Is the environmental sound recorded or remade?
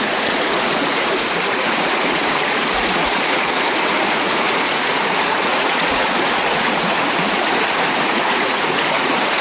remade